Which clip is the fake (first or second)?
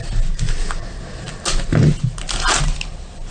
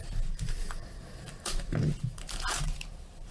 second